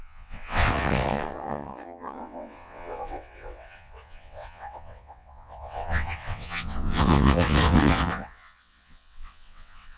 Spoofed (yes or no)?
yes